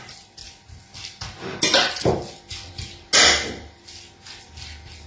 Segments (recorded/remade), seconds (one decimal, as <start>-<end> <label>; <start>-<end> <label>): 0.0-5.1 recorded

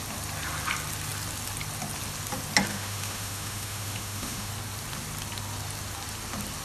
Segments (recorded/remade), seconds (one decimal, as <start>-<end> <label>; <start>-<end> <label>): 0.0-2.7 recorded; 2.7-4.5 remade; 4.5-6.6 recorded

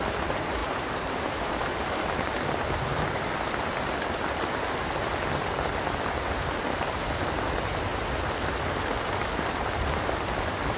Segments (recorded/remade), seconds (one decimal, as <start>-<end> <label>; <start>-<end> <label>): 0.0-7.9 remade; 7.9-8.8 recorded; 8.8-10.8 remade

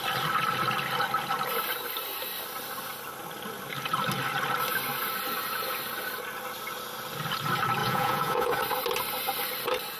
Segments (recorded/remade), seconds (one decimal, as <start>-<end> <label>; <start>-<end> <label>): 0.0-7.8 recorded; 7.8-8.6 remade; 8.6-10.0 recorded

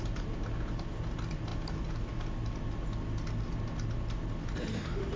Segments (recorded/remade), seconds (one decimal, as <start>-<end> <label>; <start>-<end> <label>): 0.0-5.2 recorded

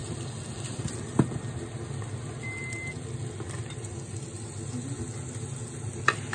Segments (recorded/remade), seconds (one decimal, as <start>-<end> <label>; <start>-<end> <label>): 0.0-6.3 recorded